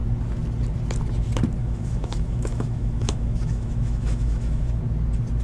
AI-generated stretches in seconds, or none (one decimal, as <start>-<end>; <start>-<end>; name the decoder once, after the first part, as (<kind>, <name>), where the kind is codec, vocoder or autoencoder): 1.6-4.8 (autoencoder, DAC-VAE)